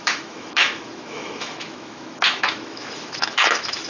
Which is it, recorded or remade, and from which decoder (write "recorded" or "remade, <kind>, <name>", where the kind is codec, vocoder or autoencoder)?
remade, autoencoder, DAC-VAE